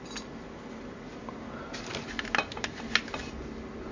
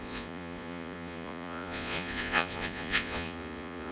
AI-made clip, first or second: second